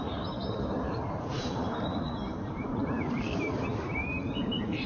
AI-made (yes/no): yes